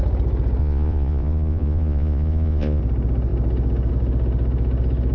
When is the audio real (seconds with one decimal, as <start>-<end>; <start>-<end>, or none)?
0.0-0.6; 2.8-5.1